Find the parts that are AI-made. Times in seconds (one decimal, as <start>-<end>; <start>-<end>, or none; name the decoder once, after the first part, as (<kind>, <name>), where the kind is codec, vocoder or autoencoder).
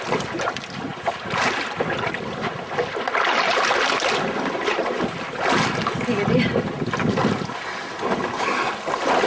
none